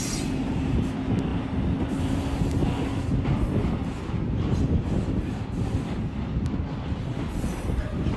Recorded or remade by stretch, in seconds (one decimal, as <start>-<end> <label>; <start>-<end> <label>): 0.0-8.2 recorded